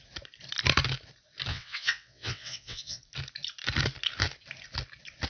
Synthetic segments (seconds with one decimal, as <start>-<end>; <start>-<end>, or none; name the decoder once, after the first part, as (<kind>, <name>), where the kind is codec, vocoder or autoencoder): 1.5-3.0 (vocoder, WaveNeXt)